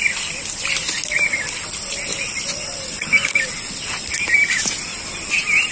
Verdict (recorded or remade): recorded